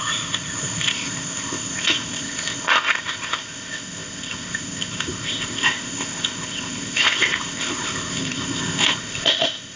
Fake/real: fake